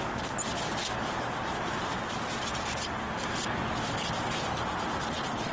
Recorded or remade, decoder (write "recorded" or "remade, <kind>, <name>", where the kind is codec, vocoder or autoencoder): recorded